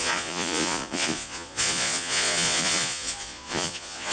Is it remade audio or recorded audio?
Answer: remade